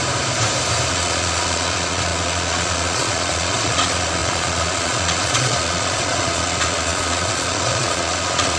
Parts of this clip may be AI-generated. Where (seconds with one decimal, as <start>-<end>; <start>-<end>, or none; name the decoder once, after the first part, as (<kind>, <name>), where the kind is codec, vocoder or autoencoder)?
0.9-8.6 (vocoder, Vocos)